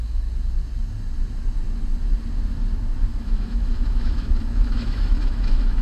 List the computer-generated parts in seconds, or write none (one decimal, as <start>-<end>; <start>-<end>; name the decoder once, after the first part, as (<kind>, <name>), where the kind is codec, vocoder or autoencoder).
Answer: 3.1-5.8 (autoencoder, DAC-VAE)